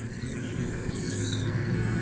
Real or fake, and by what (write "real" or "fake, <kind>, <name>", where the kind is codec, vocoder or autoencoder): fake, codec, SNAC